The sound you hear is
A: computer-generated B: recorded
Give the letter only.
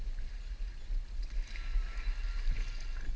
B